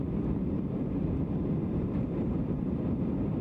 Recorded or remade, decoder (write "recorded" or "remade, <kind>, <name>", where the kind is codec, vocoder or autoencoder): remade, vocoder, BigVGAN v2